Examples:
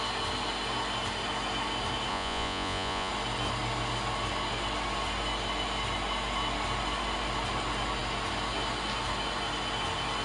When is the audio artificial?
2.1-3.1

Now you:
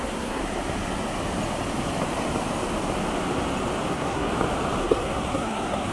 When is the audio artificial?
0.0-0.4; 3.9-4.3; 4.8-5.9

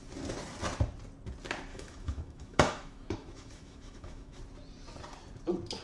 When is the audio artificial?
1.7-4.4

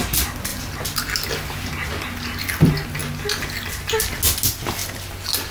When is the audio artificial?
none